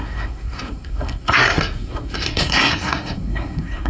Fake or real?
fake